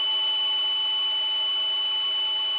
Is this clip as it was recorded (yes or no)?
yes